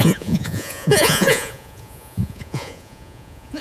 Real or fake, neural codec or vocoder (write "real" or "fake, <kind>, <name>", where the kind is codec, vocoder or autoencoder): fake, vocoder, Vocos